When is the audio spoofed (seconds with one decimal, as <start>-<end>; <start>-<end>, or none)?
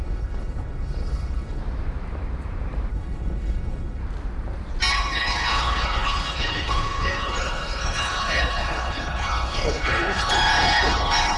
0.0-1.6; 2.9-4.0; 4.9-11.4